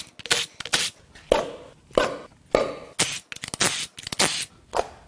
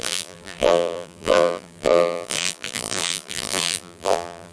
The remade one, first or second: second